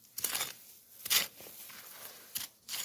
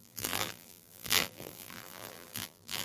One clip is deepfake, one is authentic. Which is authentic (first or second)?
first